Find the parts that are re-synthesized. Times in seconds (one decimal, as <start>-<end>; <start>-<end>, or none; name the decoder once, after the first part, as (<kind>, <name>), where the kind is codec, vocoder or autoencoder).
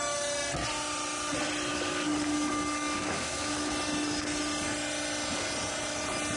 1.7-3.7 (codec, DAC)